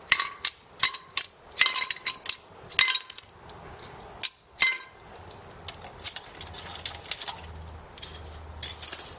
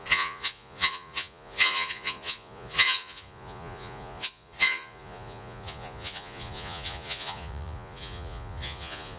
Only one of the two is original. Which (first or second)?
first